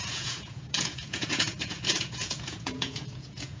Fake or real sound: fake